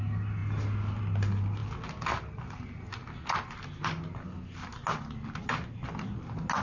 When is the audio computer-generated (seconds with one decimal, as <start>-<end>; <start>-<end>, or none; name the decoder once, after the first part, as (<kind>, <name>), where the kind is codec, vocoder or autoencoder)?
none